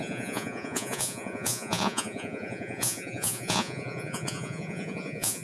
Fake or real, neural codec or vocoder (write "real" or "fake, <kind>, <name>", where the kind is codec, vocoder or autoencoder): fake, vocoder, Vocos